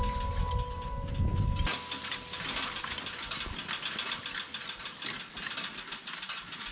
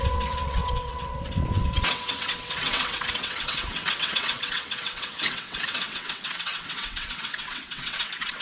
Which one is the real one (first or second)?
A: first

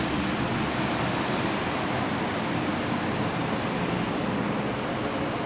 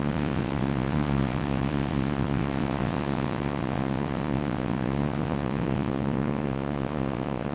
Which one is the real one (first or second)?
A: first